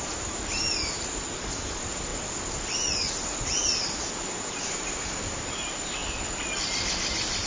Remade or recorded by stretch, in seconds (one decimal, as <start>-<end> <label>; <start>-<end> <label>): 0.0-7.5 recorded